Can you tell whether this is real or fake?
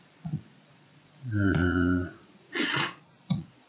fake